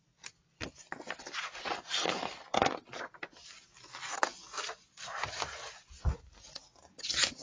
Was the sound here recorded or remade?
recorded